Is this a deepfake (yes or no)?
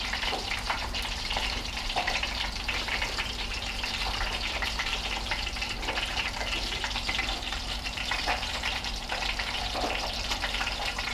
yes